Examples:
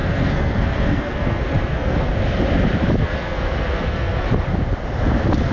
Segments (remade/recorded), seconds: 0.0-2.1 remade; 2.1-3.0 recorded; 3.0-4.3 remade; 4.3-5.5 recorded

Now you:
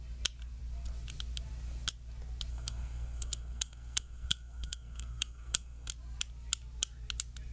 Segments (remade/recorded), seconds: 0.0-2.5 recorded; 2.5-5.9 remade; 5.9-7.5 recorded

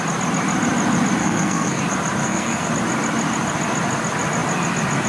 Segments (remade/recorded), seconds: 0.0-1.2 recorded; 1.2-1.8 remade; 1.8-2.2 recorded; 2.2-2.7 remade; 2.7-5.1 recorded